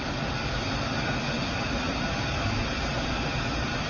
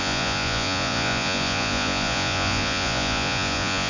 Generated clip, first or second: second